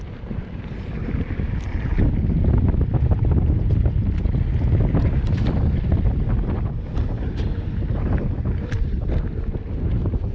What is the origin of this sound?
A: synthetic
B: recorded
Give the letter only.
B